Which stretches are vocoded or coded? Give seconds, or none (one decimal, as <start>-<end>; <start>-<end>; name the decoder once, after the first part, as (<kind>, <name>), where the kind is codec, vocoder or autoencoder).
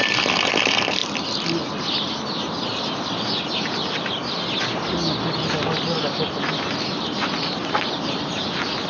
none